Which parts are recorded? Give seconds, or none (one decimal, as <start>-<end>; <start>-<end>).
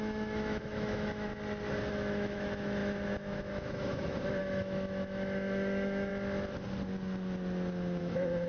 1.3-1.9; 6.1-8.0